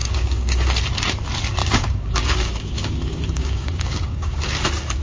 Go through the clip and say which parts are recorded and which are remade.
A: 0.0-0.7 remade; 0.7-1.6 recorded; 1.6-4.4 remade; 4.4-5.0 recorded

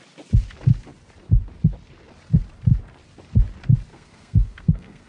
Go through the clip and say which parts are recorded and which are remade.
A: 0.0-3.9 recorded; 3.9-5.1 remade